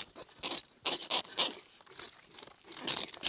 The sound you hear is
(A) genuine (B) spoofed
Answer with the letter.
A